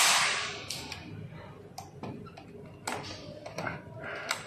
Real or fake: real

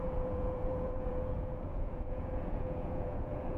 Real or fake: fake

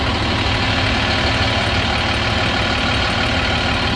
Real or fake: real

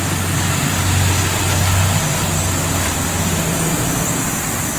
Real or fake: real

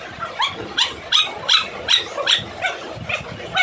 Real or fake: fake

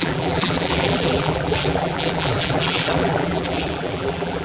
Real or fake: fake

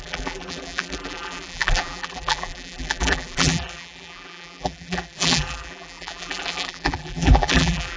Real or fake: fake